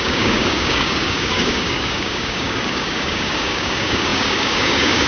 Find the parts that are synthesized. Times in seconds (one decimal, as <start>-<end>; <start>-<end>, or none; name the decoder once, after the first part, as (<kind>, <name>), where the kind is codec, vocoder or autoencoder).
0.0-5.1 (codec, DAC)